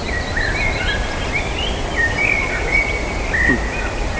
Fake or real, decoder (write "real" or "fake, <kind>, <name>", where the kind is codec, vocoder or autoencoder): real